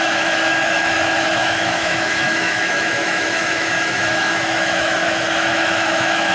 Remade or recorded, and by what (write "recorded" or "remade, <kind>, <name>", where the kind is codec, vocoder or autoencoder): remade, autoencoder, DAC-VAE